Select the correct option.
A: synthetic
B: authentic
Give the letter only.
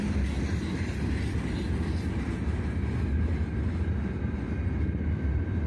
B